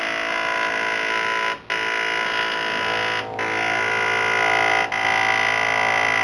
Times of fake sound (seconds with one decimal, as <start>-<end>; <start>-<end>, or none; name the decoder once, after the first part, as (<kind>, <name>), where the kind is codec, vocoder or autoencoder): none